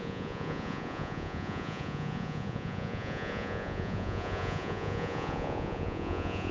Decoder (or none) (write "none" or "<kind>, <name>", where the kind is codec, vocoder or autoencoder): vocoder, Vocos